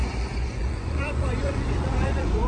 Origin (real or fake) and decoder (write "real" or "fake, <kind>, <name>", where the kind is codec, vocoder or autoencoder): fake, vocoder, Vocos